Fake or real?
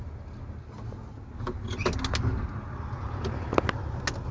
real